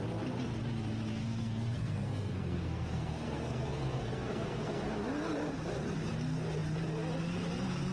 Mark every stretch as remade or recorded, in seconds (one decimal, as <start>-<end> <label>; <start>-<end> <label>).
0.0-1.2 recorded; 1.2-4.9 remade; 4.9-7.9 recorded